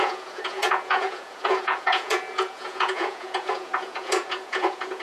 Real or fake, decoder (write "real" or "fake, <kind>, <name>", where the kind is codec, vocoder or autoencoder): fake, vocoder, Vocos